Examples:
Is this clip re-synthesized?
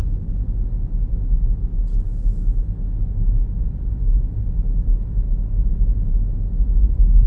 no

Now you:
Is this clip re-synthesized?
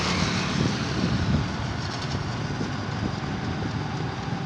no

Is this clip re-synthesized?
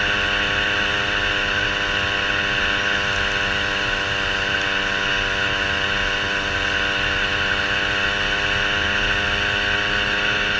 no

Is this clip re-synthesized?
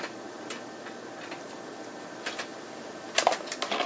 no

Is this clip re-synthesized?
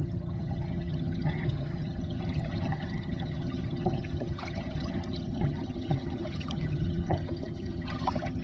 yes